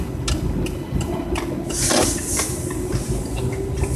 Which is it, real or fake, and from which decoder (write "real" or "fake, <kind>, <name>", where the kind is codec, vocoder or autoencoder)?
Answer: real